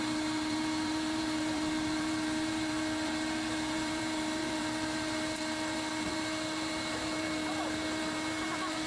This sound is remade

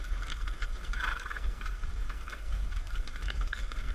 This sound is remade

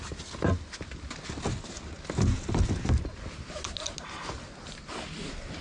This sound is recorded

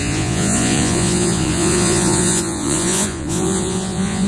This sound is remade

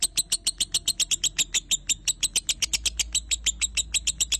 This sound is recorded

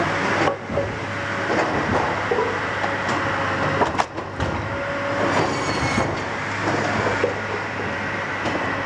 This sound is recorded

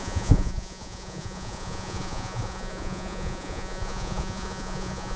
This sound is remade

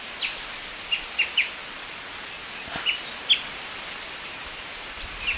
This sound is recorded